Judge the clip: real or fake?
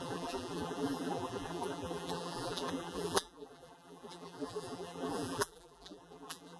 fake